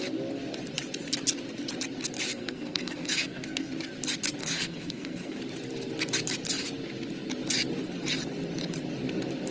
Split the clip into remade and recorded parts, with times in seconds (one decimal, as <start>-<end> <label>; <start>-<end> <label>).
0.0-2.3 recorded; 2.3-3.7 remade; 3.7-4.4 recorded; 4.4-5.4 remade; 5.4-9.5 recorded